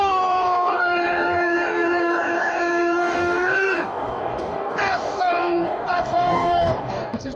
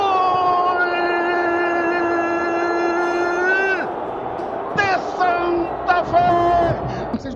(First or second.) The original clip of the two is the second